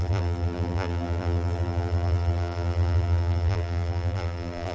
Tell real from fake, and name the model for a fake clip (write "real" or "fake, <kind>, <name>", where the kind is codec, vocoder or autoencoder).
fake, vocoder, BigVGAN v2